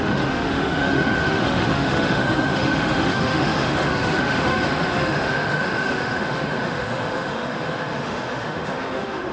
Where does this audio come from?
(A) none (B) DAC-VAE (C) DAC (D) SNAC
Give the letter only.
B